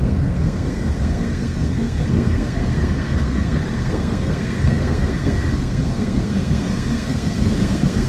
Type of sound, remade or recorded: remade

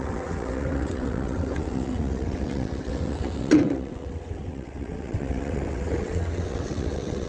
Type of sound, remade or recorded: remade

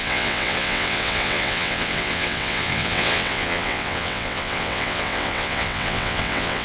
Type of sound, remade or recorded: remade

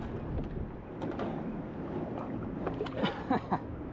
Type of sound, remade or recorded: recorded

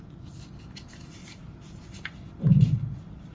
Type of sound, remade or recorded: recorded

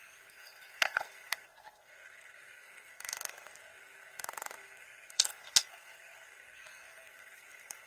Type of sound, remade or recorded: remade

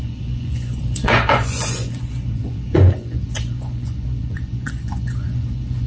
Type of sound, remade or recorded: remade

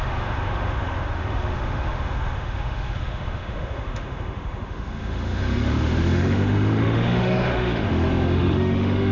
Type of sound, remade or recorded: remade